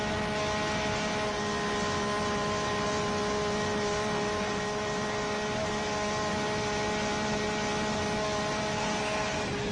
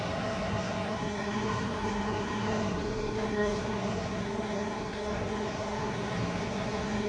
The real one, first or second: first